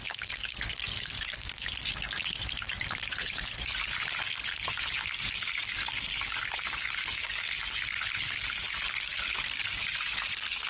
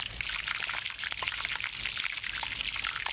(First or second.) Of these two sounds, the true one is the second